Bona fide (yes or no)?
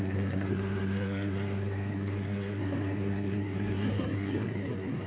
no